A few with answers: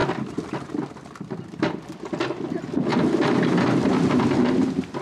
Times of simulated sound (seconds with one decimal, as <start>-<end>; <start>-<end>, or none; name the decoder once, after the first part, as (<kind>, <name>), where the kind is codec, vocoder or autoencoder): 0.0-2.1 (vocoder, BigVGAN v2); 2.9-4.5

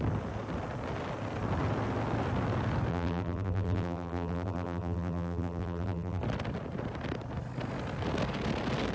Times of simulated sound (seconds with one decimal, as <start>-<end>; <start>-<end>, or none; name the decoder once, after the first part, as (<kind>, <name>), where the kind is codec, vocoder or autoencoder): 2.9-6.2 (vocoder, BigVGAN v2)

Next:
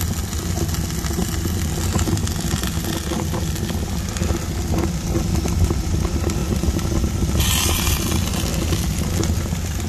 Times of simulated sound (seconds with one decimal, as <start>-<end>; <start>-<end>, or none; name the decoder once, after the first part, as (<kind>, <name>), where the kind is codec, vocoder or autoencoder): 1.2-2.1 (vocoder, BigVGAN v2); 6.4-7.5

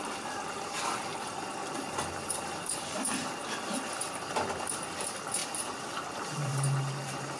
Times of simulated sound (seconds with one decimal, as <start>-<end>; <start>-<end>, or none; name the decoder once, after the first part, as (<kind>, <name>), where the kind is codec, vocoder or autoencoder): 0.0-5.4 (vocoder, BigVGAN v2)

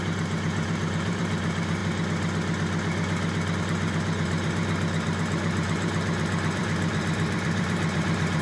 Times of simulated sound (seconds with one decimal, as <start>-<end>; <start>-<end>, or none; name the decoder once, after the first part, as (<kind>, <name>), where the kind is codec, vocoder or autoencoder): 0.0-1.8 (vocoder, BigVGAN v2); 3.6-8.4